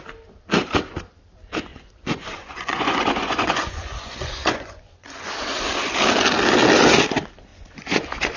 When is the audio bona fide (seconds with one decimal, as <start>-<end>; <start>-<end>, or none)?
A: 0.0-1.7; 5.3-7.5